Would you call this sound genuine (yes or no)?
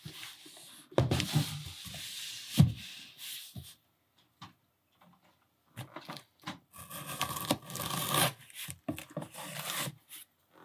yes